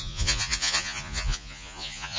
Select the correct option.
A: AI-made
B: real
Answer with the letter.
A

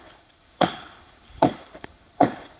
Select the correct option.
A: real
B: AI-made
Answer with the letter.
B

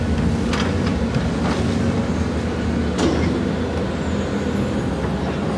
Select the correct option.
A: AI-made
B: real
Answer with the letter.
B